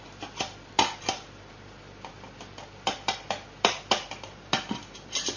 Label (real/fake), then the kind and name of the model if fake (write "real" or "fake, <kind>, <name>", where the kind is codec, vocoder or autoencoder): fake, vocoder, BigVGAN v2